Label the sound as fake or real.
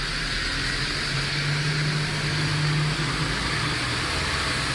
real